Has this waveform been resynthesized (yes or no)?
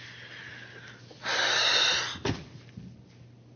no